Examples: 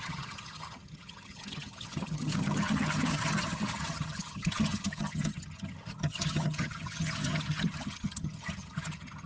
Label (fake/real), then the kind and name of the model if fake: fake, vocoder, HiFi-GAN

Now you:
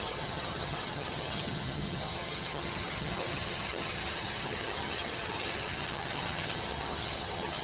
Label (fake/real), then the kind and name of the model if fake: fake, vocoder, HiFi-GAN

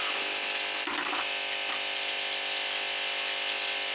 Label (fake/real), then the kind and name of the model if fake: real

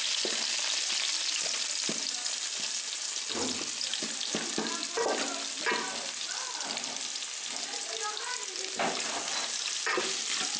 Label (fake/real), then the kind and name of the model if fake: real